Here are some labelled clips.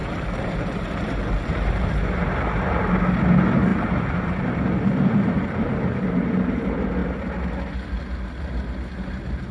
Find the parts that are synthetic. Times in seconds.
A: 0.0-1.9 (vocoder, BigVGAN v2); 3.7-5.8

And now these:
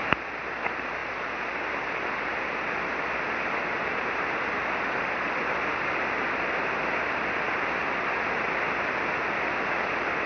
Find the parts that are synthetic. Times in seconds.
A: 0.0-10.3 (vocoder, BigVGAN v2)